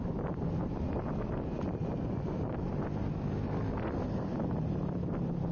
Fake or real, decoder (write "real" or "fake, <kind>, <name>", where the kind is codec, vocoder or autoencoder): real